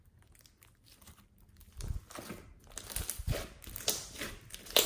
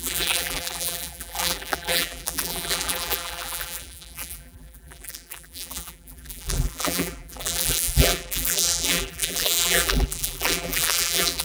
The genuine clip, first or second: first